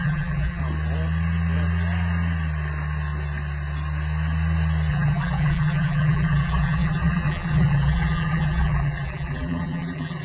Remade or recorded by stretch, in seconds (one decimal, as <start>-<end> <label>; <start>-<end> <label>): 0.0-0.6 remade; 0.6-4.9 recorded; 4.9-10.2 remade